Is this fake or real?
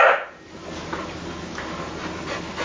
real